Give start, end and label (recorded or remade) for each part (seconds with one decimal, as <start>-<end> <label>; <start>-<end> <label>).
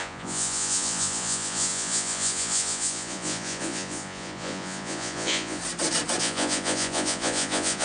0.0-5.6 remade; 5.6-6.2 recorded; 6.2-7.8 remade